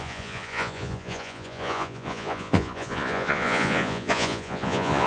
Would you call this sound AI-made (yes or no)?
yes